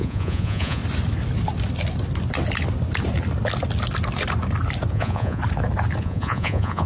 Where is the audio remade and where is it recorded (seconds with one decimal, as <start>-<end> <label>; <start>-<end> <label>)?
0.0-0.8 remade; 0.8-4.9 recorded; 4.9-5.4 remade; 5.4-6.0 recorded; 6.0-6.9 remade

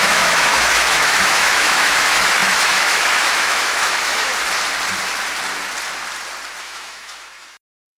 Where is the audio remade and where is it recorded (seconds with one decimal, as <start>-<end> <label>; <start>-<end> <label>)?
0.0-4.3 remade; 4.3-6.6 recorded; 6.6-8.0 remade

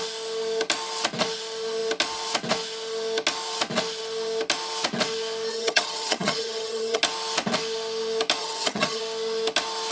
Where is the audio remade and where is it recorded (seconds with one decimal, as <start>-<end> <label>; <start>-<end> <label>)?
0.0-5.5 recorded; 5.5-7.0 remade; 7.0-8.4 recorded; 8.4-9.0 remade; 9.0-9.9 recorded

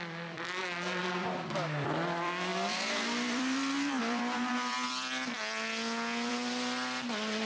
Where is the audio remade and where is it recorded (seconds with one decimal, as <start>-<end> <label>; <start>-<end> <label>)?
0.0-5.4 remade; 5.4-6.3 recorded; 6.3-7.5 remade

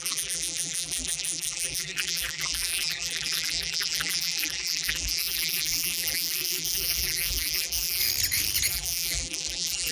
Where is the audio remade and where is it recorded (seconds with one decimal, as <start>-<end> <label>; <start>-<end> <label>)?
0.0-8.0 remade; 8.0-8.7 recorded; 8.7-9.9 remade